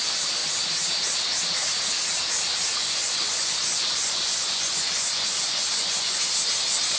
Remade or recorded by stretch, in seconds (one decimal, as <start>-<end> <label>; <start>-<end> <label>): 0.0-2.8 recorded; 2.8-6.2 remade; 6.2-7.0 recorded